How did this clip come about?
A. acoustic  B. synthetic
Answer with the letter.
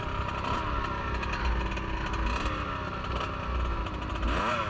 A